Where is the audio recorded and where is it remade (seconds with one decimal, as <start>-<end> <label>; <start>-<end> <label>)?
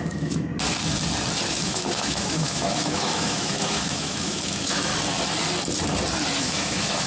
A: 0.0-0.5 remade; 0.5-1.5 recorded; 1.5-4.9 remade; 4.9-6.4 recorded; 6.4-7.1 remade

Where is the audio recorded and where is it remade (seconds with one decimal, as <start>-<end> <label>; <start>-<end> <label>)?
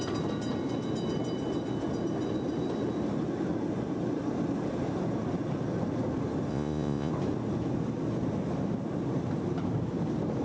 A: 0.0-6.5 recorded; 6.5-7.1 remade; 7.1-10.4 recorded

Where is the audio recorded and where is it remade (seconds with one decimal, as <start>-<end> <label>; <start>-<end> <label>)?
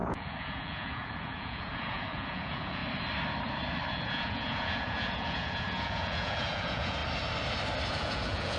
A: 0.0-2.8 remade; 2.8-3.9 recorded; 3.9-7.0 remade; 7.0-7.9 recorded; 7.9-8.6 remade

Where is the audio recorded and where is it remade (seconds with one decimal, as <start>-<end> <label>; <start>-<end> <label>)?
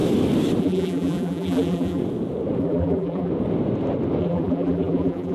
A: 0.0-0.6 recorded; 0.6-2.0 remade; 2.0-2.6 recorded; 2.6-3.3 remade; 3.3-4.2 recorded; 4.2-5.3 remade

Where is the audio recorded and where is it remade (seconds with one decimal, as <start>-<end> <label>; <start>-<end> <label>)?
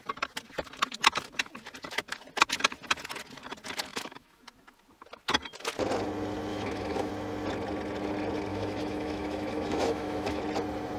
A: 0.0-3.9 recorded; 3.9-4.4 remade; 4.4-6.5 recorded; 6.5-7.1 remade; 7.1-8.5 recorded; 8.5-10.4 remade; 10.4-11.0 recorded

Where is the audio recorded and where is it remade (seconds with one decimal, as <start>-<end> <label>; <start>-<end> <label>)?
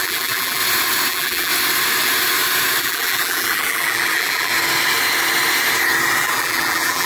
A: 0.0-0.6 remade; 0.6-1.1 recorded; 1.1-1.5 remade; 1.5-2.8 recorded; 2.8-4.5 remade; 4.5-6.2 recorded; 6.2-7.1 remade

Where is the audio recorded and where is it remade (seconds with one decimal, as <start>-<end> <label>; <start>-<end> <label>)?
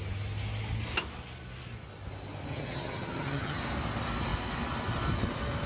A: 0.0-2.5 recorded; 2.5-3.6 remade; 3.6-5.7 recorded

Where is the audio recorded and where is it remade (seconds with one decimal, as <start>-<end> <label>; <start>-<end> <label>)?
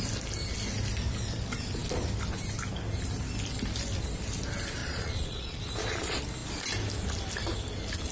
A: 0.0-4.8 recorded; 4.8-5.6 remade; 5.6-8.1 recorded